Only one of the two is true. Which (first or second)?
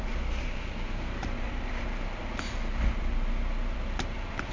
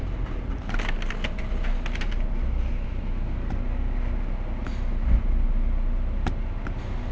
second